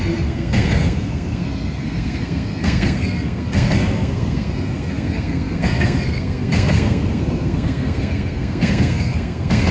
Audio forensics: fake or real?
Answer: fake